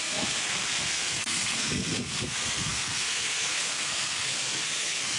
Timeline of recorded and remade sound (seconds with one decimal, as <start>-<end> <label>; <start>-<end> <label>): 0.0-5.2 remade